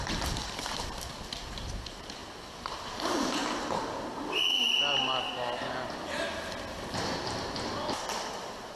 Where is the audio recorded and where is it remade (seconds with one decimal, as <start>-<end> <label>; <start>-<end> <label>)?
0.0-3.4 remade; 3.4-8.1 recorded; 8.1-8.8 remade